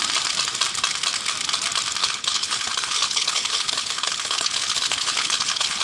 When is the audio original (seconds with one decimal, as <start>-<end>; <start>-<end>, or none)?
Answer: 0.0-2.0